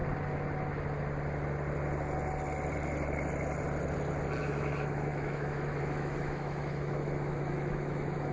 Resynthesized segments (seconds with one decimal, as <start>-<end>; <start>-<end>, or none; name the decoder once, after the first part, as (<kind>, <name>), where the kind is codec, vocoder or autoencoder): 4.4-8.3 (autoencoder, DAC-VAE)